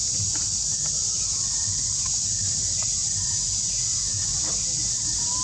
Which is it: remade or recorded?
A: recorded